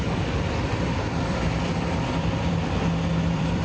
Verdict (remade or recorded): remade